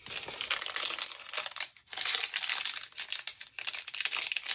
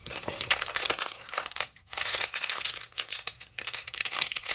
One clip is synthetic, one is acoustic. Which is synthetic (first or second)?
second